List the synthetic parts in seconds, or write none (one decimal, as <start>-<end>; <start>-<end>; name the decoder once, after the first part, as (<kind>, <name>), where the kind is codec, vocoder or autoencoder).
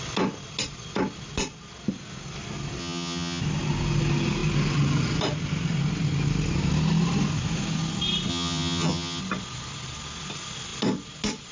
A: 2.8-3.4 (vocoder, HiFi-GAN); 8.3-9.2